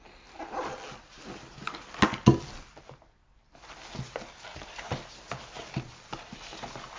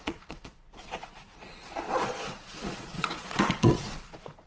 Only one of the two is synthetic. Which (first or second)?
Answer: second